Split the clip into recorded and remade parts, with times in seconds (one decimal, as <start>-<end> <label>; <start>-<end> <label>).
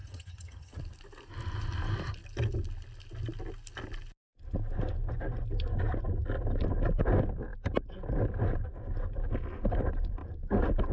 0.0-0.8 remade; 0.8-10.9 recorded